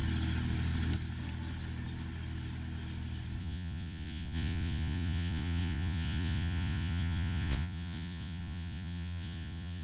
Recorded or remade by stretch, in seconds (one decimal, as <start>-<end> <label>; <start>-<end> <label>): 0.0-3.4 recorded; 3.4-9.8 remade